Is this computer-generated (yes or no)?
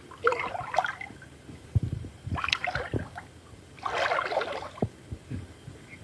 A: no